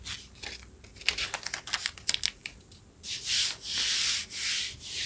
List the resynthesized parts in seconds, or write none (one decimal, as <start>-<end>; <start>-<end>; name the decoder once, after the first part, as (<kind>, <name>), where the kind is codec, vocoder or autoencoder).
none

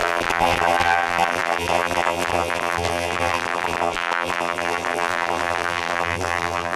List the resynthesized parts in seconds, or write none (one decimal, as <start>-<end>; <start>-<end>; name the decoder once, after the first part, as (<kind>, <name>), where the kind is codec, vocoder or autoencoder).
0.0-6.8 (vocoder, BigVGAN v2)

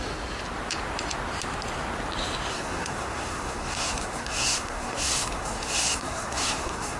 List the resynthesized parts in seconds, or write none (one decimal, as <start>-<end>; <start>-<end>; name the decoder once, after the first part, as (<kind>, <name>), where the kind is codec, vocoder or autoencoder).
2.5-7.0 (codec, SNAC)

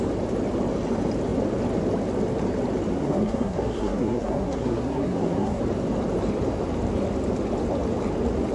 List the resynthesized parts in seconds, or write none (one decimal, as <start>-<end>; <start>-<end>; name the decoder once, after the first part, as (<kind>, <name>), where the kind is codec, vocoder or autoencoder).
2.9-5.6 (codec, SNAC)